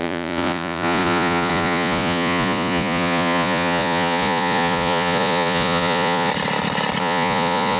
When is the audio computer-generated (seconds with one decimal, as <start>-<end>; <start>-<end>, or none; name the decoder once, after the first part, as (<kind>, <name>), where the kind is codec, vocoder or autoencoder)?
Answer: 0.0-6.3 (vocoder, Vocos); 7.0-7.8